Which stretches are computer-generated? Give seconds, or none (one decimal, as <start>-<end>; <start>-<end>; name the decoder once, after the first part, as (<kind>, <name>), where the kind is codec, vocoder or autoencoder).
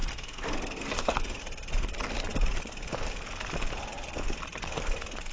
0.0-1.4 (codec, SNAC)